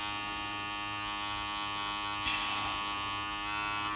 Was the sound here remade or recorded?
recorded